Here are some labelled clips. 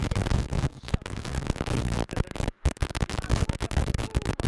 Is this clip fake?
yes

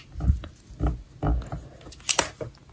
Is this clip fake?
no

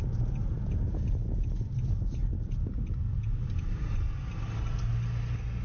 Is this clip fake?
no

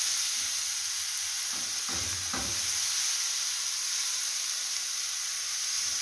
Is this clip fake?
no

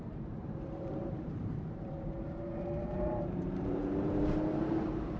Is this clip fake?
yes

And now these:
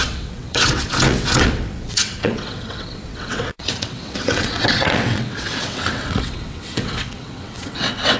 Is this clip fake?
yes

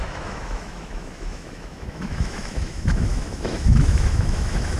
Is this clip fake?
yes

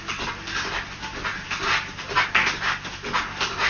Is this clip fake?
no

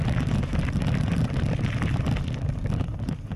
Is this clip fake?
no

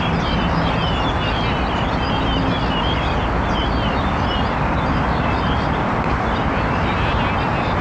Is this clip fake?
no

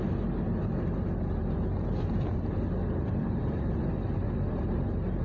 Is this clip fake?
no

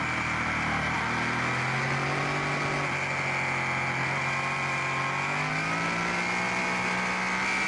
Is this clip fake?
no